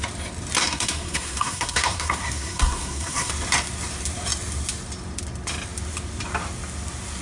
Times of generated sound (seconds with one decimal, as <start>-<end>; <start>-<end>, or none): 0.6-3.3